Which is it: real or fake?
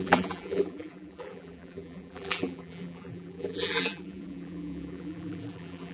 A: fake